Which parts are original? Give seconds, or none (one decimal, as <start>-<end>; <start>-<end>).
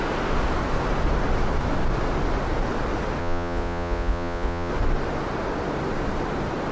0.0-3.2; 4.7-6.7